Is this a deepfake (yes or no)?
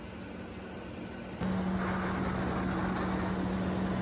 no